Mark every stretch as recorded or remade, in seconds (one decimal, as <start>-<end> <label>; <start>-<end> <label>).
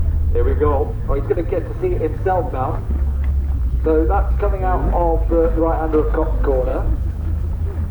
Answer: 0.0-0.5 recorded; 0.5-1.0 remade; 1.0-1.8 recorded; 1.8-3.3 remade; 3.3-4.8 recorded; 4.8-5.6 remade; 5.6-6.7 recorded; 6.7-7.4 remade; 7.4-7.9 recorded